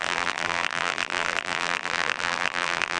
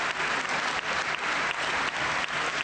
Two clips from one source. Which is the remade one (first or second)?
first